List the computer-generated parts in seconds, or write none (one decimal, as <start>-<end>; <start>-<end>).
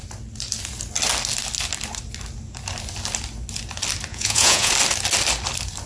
4.1-4.7